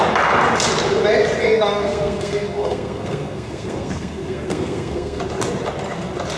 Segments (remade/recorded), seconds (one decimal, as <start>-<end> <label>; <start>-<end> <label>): 0.0-1.4 recorded; 1.4-5.2 remade; 5.2-6.4 recorded